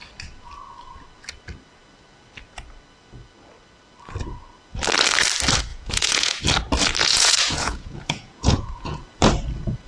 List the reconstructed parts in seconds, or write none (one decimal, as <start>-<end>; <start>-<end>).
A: 5.7-6.4; 7.0-9.0